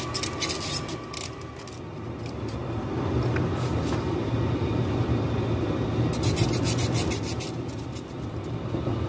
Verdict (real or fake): real